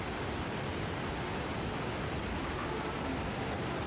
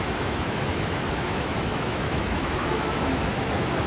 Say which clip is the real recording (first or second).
first